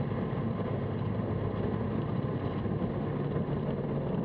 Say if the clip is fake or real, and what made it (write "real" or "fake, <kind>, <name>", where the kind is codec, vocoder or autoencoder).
real